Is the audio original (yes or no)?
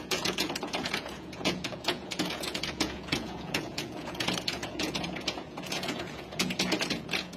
no